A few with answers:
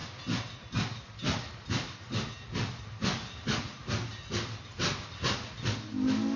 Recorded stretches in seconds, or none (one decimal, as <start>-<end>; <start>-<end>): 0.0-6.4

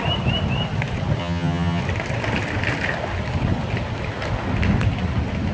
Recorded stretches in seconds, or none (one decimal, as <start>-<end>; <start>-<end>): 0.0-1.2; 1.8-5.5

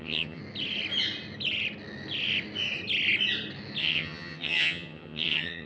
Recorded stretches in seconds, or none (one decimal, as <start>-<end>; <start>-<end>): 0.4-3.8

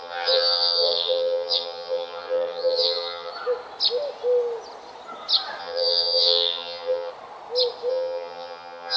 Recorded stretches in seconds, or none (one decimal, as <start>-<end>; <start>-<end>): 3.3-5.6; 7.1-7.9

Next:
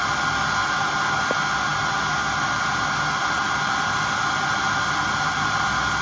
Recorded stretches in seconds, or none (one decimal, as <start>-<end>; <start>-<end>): 0.0-6.0

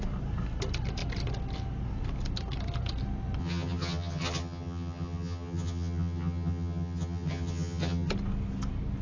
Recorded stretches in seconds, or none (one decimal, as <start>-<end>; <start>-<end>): 0.0-3.4; 8.1-9.0